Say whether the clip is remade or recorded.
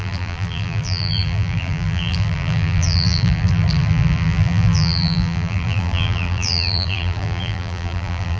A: remade